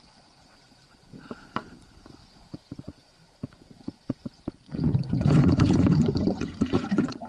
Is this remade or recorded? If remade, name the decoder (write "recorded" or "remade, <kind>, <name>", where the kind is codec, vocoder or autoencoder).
remade, vocoder, Vocos